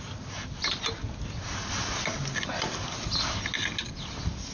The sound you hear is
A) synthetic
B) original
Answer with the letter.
B